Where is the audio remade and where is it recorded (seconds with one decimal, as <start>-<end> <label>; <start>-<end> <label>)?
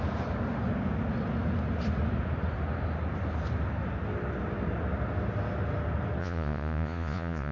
0.0-6.2 recorded; 6.2-7.5 remade